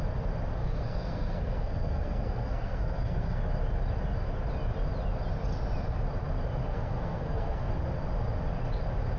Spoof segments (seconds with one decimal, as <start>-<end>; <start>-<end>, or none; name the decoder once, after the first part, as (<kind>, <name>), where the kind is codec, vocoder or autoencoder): 0.6-3.4 (codec, SNAC); 6.7-7.7